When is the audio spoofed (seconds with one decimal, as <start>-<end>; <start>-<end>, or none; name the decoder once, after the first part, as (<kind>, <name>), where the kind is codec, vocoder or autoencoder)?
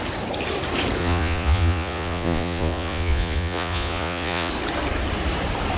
1.0-4.5 (vocoder, Vocos)